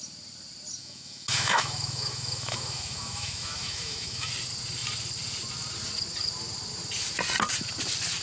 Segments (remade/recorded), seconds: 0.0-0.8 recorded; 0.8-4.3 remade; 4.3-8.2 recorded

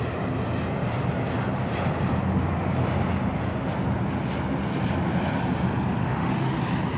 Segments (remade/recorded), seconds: 0.0-6.0 recorded; 6.0-6.6 remade; 6.6-7.0 recorded

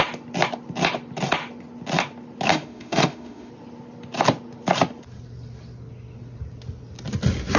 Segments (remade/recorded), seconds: 0.0-2.5 recorded; 2.5-3.5 remade; 3.5-7.6 recorded

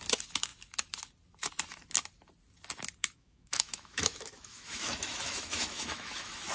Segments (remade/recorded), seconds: 0.0-3.0 recorded; 3.0-6.5 remade

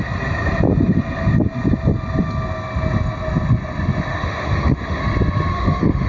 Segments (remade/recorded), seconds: 0.0-4.1 recorded; 4.1-5.0 remade; 5.0-5.5 recorded; 5.5-6.1 remade

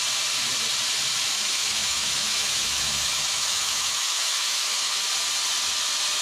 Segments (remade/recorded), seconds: 0.0-1.3 recorded; 1.3-5.0 remade; 5.0-6.2 recorded